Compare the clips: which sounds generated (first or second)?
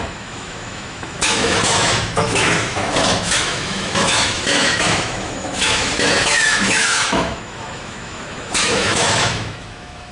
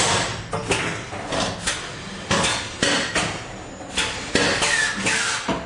first